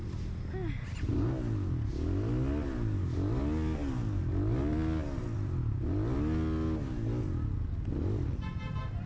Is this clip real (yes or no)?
yes